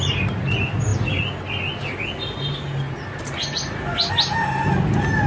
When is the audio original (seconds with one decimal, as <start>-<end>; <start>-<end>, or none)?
0.0-5.3